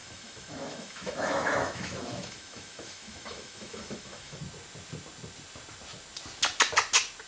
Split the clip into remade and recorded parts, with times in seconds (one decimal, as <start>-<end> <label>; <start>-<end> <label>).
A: 0.0-4.4 remade; 4.4-7.3 recorded